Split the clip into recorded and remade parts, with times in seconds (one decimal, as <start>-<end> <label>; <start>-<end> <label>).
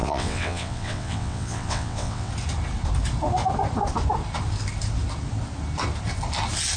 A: 0.0-2.3 remade; 2.3-6.8 recorded